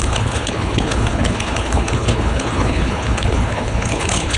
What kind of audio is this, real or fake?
fake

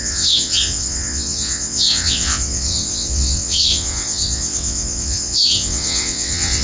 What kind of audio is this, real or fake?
fake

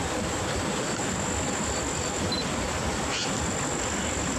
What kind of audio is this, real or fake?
real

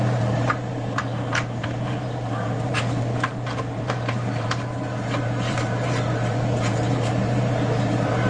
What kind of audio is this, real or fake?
fake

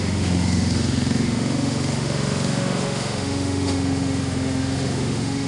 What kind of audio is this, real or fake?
fake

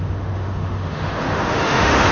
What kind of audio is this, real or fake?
fake